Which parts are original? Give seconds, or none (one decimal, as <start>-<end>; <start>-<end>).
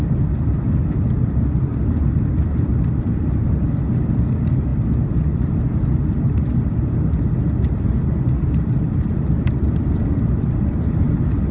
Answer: 0.0-11.5